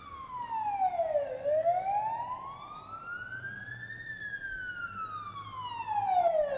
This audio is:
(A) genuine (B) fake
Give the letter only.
A